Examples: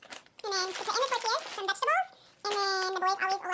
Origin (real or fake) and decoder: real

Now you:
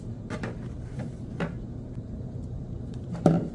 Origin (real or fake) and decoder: fake, vocoder, BigVGAN v2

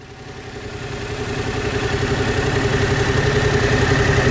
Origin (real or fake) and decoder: real